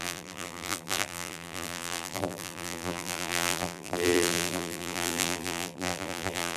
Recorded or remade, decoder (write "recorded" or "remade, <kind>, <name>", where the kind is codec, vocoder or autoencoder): remade, vocoder, BigVGAN v2